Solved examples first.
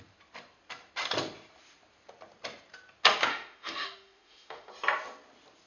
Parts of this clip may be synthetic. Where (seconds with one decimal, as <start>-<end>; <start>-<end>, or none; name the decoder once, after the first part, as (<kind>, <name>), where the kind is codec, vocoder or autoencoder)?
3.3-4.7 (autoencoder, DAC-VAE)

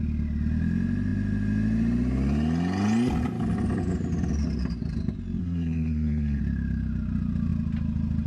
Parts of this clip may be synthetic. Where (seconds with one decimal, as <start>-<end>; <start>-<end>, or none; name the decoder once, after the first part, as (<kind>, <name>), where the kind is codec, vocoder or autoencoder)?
5.4-6.4 (codec, SNAC)

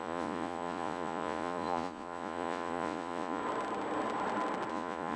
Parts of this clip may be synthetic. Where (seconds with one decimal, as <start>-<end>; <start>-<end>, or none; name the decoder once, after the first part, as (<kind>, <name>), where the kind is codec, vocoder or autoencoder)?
0.0-3.4 (vocoder, Vocos); 4.7-5.2